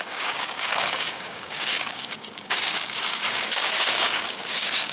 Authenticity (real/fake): fake